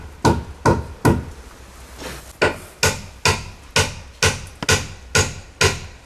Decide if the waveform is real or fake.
real